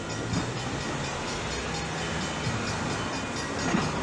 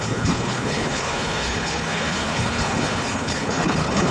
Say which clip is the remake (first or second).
second